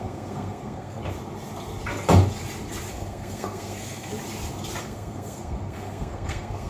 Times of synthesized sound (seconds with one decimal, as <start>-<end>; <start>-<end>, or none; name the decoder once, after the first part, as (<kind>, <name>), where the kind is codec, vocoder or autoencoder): 0.0-1.0 (codec, SNAC); 2.9-4.1; 4.8-6.7